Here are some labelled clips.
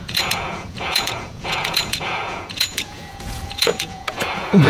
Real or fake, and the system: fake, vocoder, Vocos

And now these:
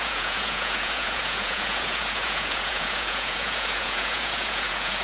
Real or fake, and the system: fake, vocoder, Vocos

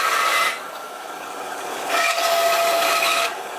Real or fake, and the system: fake, codec, DAC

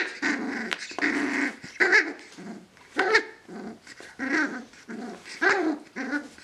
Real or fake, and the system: real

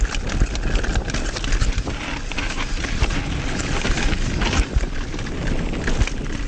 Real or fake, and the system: real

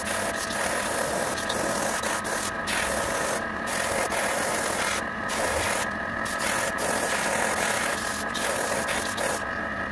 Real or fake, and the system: real